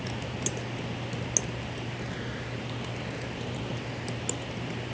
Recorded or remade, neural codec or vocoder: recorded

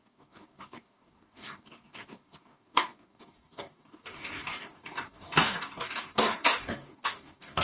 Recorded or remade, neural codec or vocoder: remade, codec, DAC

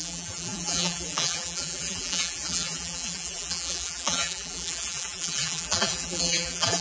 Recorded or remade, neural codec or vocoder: remade, vocoder, BigVGAN v2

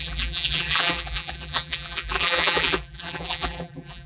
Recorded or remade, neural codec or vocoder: remade, vocoder, BigVGAN v2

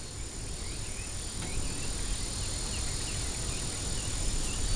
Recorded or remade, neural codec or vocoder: recorded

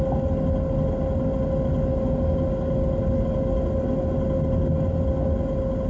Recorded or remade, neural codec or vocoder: recorded